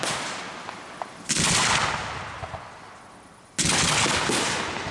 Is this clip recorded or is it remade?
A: recorded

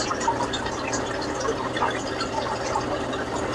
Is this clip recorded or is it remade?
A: recorded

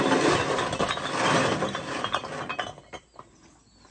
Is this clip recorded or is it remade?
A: recorded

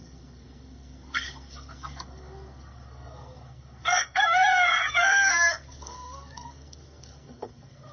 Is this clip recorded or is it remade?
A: remade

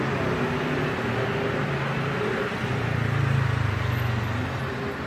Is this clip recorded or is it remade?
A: recorded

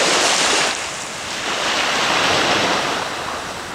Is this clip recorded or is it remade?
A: recorded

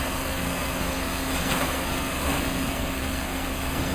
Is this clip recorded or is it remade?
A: remade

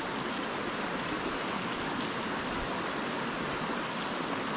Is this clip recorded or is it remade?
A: recorded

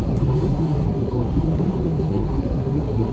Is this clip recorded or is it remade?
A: remade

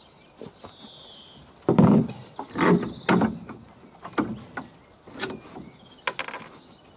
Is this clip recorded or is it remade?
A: recorded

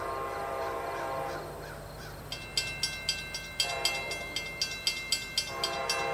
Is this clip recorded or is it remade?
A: recorded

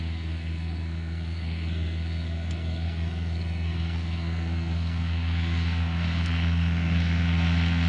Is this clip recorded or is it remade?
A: remade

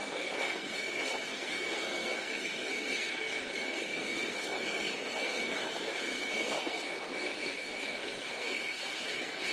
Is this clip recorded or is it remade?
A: remade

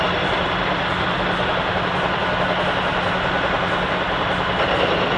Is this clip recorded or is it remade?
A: recorded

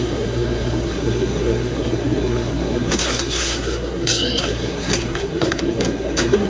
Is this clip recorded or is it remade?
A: remade